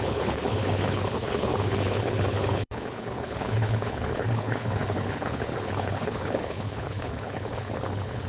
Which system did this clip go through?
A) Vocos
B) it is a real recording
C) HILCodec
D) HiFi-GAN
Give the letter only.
C